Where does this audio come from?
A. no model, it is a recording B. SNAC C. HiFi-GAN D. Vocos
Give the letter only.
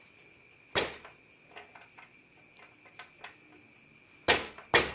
A